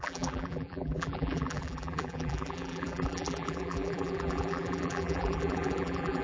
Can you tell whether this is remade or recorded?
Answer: remade